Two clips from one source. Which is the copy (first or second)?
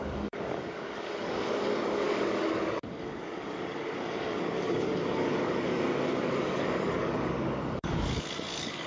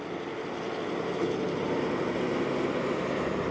first